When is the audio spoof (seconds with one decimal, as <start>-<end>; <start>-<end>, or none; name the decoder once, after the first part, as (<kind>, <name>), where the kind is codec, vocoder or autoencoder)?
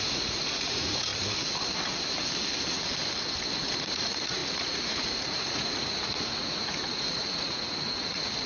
0.0-1.1 (vocoder, Vocos); 3.5-8.5